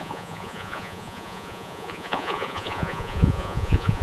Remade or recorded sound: remade